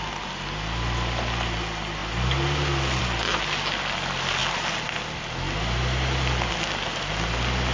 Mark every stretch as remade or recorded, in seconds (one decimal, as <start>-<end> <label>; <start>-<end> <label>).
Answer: 0.0-7.7 recorded